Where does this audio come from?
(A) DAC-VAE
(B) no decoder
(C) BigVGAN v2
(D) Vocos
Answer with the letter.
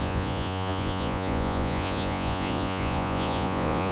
D